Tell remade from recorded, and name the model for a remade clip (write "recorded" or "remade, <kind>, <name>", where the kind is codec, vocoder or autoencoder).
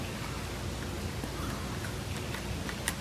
recorded